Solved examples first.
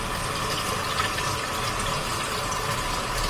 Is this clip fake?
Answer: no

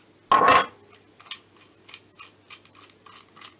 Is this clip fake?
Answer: no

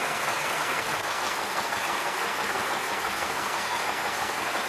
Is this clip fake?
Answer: yes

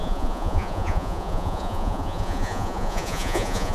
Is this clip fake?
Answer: yes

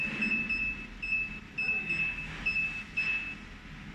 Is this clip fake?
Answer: no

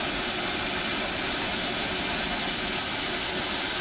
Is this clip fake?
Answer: no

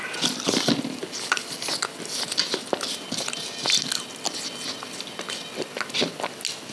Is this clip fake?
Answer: no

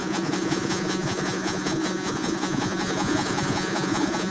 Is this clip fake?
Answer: yes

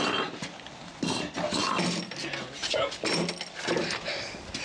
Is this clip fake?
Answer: no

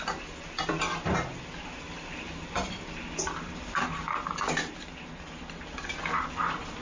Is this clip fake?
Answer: no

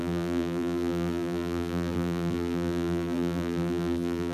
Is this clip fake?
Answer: yes